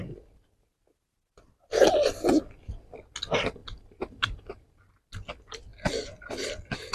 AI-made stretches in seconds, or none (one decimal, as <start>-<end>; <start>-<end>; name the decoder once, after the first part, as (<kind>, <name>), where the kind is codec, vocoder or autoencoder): 3.6-4.9 (vocoder, BigVGAN v2)